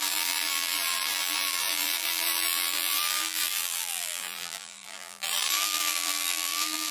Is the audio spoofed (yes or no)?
yes